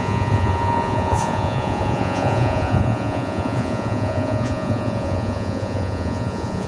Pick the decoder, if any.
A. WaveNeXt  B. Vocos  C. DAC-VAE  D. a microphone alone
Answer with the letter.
B